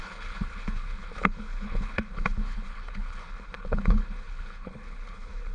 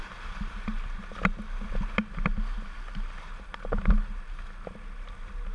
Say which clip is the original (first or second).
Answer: second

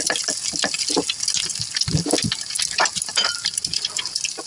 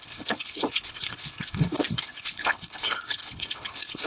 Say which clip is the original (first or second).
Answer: first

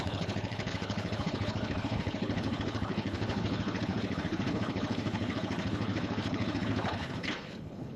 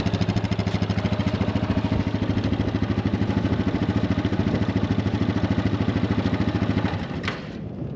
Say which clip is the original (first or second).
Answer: second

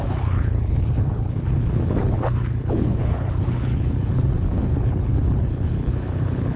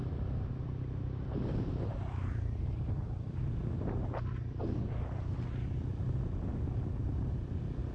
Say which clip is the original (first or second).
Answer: second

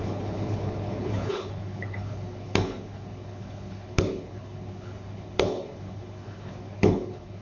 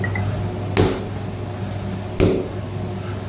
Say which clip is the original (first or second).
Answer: second